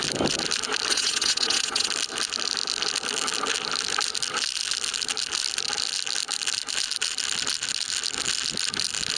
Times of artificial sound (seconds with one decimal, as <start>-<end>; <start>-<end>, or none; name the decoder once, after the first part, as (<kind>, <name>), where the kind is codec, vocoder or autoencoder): 0.9-1.9 (vocoder, WaveNeXt)